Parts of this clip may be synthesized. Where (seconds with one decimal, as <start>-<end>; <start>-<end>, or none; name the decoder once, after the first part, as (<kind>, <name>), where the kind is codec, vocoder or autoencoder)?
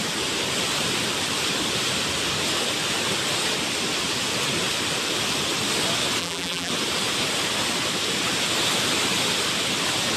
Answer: 6.2-6.7 (vocoder, BigVGAN v2)